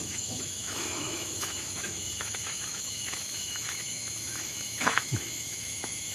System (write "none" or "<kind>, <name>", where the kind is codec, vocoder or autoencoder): autoencoder, DAC-VAE